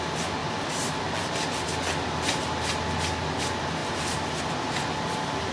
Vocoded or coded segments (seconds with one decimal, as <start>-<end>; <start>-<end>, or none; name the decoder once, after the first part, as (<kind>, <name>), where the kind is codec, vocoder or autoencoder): none